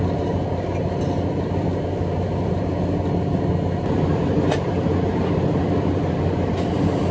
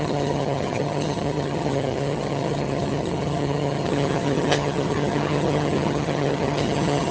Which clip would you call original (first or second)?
first